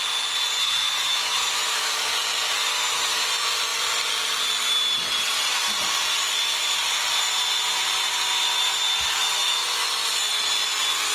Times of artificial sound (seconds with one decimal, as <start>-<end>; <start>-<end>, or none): 0.6-2.1